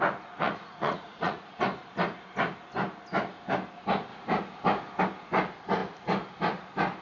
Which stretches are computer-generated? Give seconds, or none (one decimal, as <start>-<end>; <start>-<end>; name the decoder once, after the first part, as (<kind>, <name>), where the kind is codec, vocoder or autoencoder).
0.4-1.6 (vocoder, Vocos)